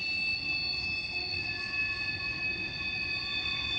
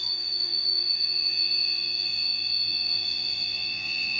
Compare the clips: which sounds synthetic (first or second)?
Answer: second